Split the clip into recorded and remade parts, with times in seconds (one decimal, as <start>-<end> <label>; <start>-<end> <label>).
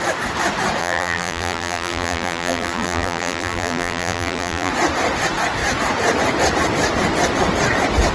0.0-0.8 recorded; 0.8-4.7 remade; 4.7-8.1 recorded